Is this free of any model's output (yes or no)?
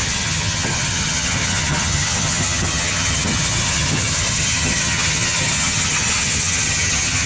no